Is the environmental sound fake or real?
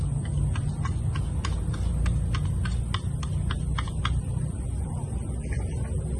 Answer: real